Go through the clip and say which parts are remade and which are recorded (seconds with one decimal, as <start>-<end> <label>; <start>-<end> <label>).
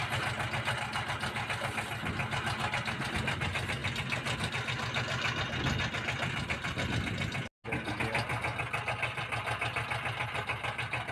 0.0-11.1 recorded